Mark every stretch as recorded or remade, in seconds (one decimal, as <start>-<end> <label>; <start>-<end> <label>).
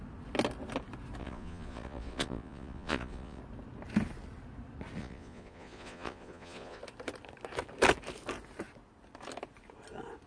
0.0-1.2 recorded; 1.2-3.4 remade; 3.4-5.0 recorded; 5.0-6.8 remade; 6.8-10.3 recorded